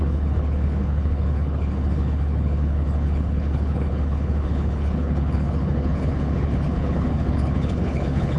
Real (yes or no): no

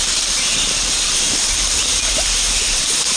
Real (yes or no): yes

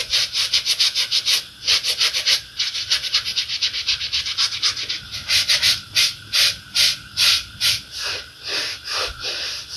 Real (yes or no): yes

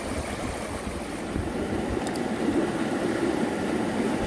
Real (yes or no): yes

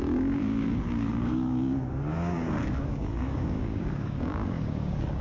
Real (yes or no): no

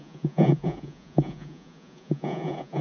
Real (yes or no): no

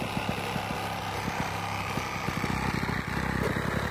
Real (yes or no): yes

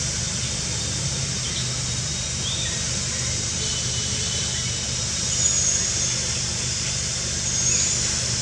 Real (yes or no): yes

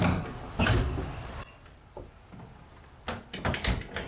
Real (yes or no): yes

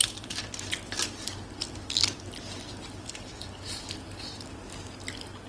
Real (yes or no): yes